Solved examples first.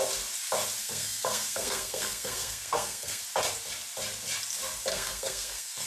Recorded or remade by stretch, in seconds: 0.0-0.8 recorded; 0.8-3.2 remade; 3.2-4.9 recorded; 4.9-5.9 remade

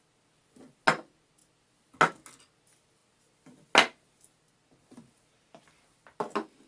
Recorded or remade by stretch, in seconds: 0.0-6.7 recorded

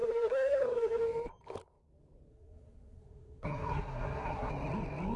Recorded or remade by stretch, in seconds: 0.0-1.0 remade; 1.0-2.3 recorded; 2.3-4.5 remade; 4.5-5.2 recorded

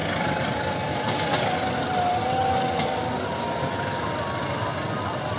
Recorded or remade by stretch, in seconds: 0.0-5.4 recorded

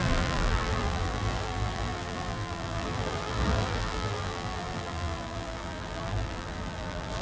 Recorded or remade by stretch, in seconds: 0.0-7.2 remade